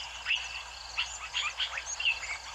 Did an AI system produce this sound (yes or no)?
no